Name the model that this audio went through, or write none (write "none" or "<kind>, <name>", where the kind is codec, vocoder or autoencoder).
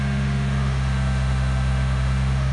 autoencoder, DAC-VAE